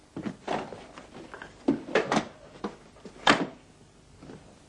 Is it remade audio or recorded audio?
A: recorded